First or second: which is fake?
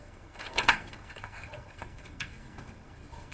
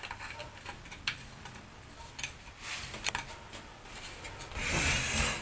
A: first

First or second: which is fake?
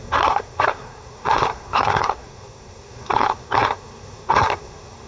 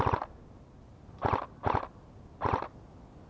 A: first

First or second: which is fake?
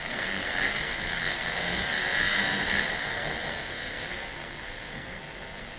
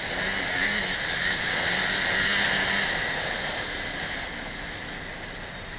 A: first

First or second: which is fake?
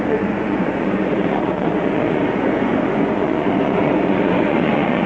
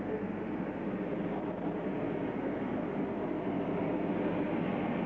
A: first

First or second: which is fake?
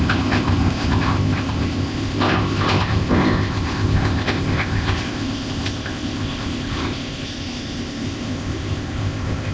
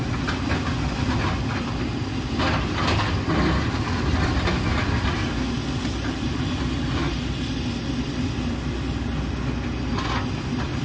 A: first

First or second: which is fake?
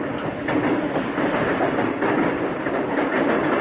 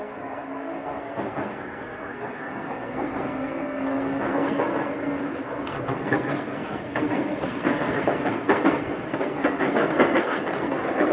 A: second